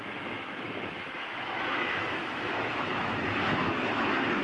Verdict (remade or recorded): remade